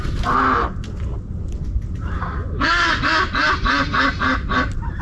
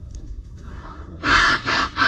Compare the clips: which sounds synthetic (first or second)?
second